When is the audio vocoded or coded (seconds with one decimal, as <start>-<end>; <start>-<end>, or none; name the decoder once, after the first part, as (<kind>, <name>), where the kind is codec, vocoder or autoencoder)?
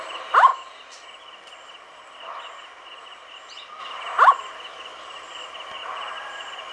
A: 0.0-0.5 (vocoder, BigVGAN v2); 3.8-4.9